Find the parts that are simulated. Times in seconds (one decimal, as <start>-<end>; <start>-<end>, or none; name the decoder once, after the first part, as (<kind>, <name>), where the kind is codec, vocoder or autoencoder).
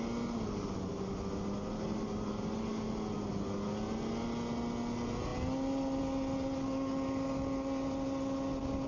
none